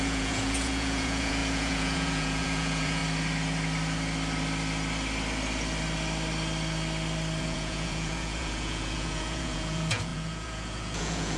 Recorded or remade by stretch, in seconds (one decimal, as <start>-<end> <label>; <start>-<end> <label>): 0.0-3.0 remade; 3.0-7.4 recorded; 7.4-11.4 remade

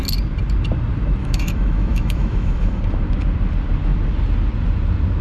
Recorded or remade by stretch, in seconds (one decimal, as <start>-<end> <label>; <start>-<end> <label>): 0.0-1.2 recorded; 1.2-2.8 remade; 2.8-5.2 recorded

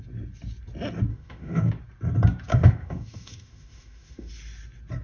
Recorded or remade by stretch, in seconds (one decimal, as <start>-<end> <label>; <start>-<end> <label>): 0.0-1.1 recorded; 1.1-1.7 remade; 1.7-2.5 recorded; 2.5-4.3 remade; 4.3-5.0 recorded

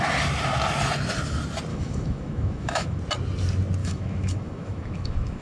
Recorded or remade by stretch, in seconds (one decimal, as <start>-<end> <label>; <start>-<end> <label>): 0.0-1.7 recorded; 1.7-3.0 remade; 3.0-3.8 recorded; 3.8-5.4 remade

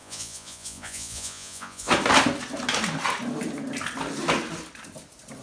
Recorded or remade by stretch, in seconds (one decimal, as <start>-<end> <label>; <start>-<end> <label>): 0.0-1.9 remade; 1.9-5.4 recorded

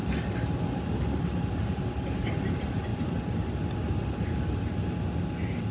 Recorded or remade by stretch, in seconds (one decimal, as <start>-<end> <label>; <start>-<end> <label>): 0.0-5.7 recorded